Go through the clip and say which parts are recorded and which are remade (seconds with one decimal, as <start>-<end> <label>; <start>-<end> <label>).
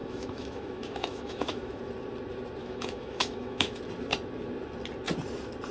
0.0-1.8 remade; 1.8-2.6 recorded; 2.6-3.8 remade; 3.8-5.7 recorded